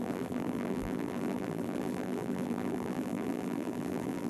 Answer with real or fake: fake